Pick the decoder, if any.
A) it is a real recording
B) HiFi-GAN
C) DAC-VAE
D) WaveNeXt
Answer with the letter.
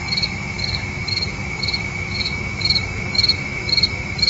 C